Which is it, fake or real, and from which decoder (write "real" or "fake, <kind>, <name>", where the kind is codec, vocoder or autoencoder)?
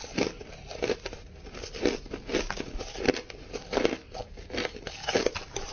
real